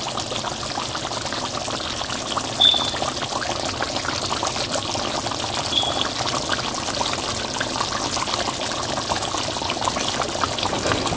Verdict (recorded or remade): recorded